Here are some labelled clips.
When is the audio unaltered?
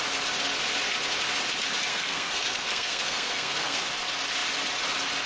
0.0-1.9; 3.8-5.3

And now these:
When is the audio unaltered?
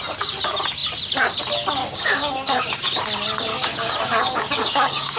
0.0-1.8; 3.0-3.5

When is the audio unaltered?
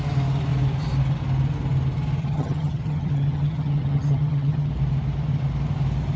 0.0-2.2; 4.7-6.2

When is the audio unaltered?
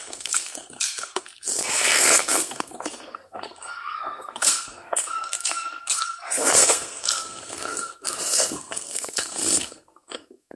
none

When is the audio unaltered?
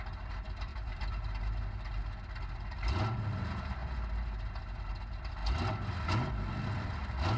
0.0-0.7; 2.0-7.4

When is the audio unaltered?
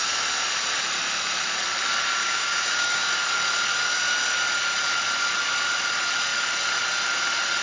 0.0-2.2; 3.1-7.6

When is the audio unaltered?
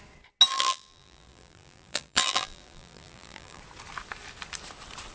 0.0-0.5; 3.6-5.1